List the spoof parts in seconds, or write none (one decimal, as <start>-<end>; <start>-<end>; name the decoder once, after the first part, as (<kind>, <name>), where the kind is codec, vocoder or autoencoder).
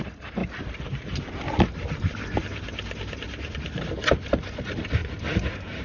none